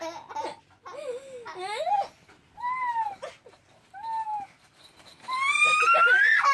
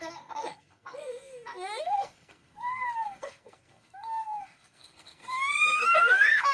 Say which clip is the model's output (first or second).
second